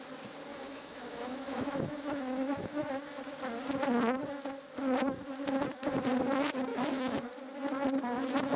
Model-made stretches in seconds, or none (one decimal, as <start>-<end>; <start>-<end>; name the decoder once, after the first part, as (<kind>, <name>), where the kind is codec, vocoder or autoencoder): 0.5-2.9 (autoencoder, DAC-VAE); 6.7-7.3